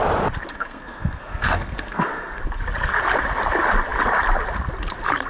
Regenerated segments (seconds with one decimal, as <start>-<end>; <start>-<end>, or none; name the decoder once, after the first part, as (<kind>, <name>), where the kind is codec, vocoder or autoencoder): 0.5-2.4 (codec, SNAC)